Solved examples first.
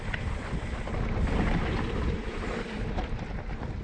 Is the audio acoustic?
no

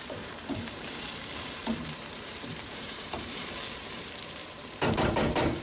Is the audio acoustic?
no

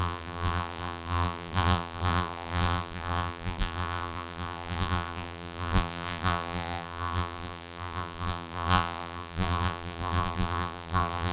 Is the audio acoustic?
no